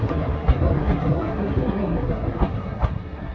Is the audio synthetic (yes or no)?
yes